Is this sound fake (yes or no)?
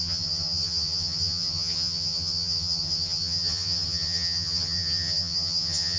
yes